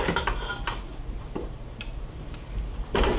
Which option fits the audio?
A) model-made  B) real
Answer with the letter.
B